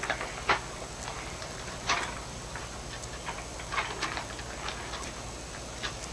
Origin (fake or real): real